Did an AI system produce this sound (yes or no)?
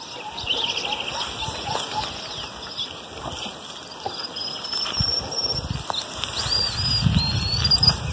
no